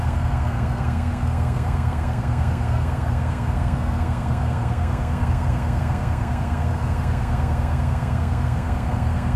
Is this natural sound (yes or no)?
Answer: no